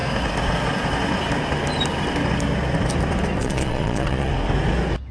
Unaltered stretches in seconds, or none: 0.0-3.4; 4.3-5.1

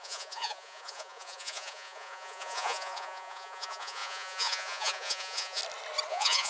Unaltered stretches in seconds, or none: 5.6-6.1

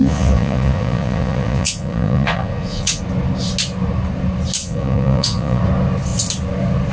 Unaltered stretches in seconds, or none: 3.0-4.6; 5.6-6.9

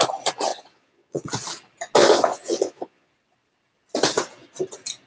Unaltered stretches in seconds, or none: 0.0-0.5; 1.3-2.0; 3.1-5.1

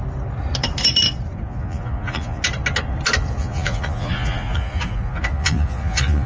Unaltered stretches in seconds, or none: 0.0-1.5; 2.4-3.4

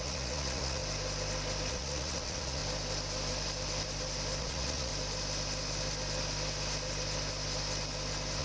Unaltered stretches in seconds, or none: 0.8-1.7; 2.6-4.4; 4.9-8.4